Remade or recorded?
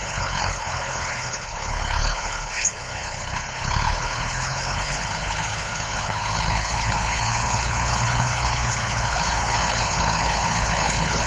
remade